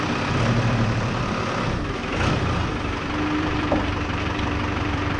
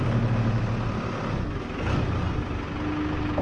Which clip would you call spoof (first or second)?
first